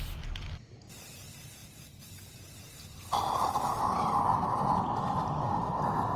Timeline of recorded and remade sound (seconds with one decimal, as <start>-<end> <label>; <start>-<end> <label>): 0.0-6.2 recorded